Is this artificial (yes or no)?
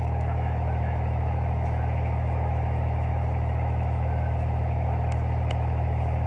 yes